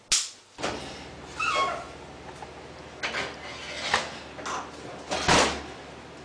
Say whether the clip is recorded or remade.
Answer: recorded